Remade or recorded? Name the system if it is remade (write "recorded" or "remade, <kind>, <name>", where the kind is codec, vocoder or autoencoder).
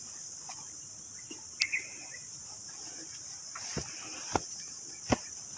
recorded